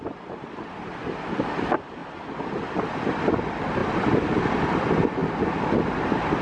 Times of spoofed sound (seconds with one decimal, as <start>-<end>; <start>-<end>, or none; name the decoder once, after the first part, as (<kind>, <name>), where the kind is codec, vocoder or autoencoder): none

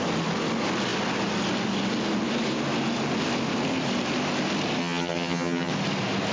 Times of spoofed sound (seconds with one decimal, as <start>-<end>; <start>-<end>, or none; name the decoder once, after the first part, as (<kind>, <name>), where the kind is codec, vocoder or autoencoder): 4.8-5.7 (vocoder, HiFi-GAN)

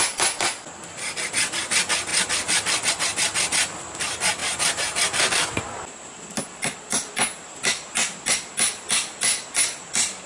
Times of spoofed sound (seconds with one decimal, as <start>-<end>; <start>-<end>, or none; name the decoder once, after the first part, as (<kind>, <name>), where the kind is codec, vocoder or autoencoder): none